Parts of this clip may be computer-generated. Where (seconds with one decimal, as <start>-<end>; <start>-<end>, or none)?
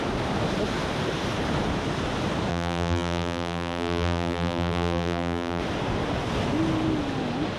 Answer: 2.5-5.6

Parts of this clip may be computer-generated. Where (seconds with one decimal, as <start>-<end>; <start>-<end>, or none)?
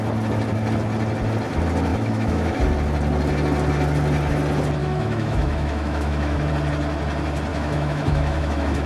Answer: 1.9-2.6; 4.8-6.5; 7.5-8.9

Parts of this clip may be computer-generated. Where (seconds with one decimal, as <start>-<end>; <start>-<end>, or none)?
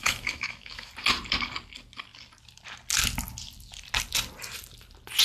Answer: 0.0-0.9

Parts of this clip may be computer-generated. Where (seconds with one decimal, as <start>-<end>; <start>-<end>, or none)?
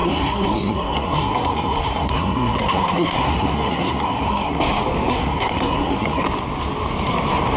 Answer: 0.0-4.6; 5.1-6.2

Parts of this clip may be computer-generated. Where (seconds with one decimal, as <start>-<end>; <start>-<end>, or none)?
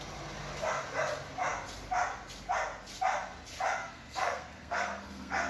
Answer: 3.8-5.5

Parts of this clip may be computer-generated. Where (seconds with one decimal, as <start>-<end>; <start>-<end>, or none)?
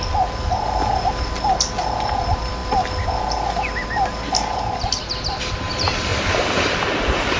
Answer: none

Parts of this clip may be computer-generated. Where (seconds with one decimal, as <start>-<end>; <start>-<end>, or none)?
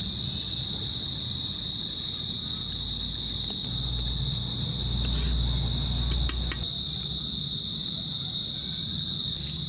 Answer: none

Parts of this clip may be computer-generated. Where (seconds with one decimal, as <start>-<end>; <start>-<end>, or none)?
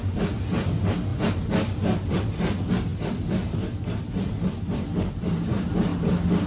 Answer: none